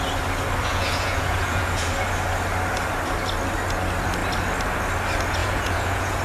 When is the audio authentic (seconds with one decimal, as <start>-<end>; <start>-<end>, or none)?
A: 0.0-0.7; 1.9-5.4